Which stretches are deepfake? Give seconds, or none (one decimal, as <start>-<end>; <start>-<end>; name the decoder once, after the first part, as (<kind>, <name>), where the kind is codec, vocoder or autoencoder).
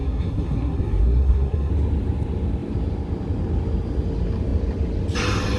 0.0-1.7 (codec, SNAC)